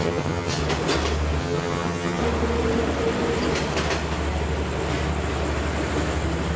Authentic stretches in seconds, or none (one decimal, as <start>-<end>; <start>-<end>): 0.6-1.4; 2.2-6.6